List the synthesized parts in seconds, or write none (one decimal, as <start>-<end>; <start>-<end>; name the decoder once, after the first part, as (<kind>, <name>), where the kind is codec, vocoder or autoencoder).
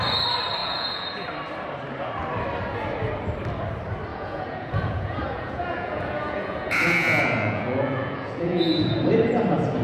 0.6-1.3 (vocoder, Vocos); 4.1-9.0